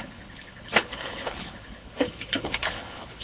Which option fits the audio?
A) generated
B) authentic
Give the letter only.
A